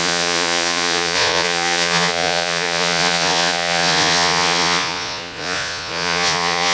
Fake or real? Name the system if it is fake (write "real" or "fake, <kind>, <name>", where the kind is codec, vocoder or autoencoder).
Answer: fake, vocoder, Vocos